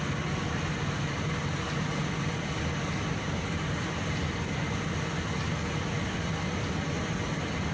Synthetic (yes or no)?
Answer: no